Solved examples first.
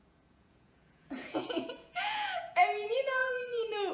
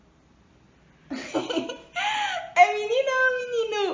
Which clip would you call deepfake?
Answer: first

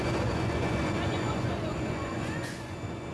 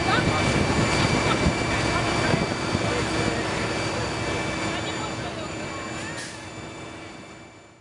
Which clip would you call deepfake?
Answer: first